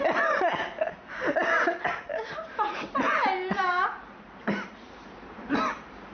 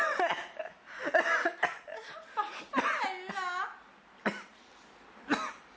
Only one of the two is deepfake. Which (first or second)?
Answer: first